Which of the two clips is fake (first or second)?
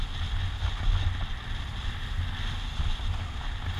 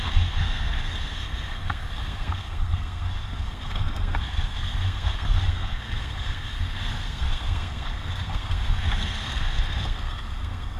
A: second